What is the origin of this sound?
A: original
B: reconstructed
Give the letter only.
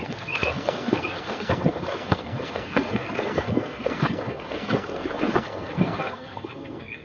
B